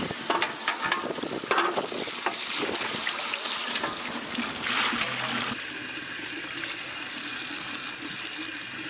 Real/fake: real